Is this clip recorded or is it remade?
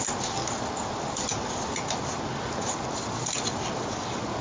recorded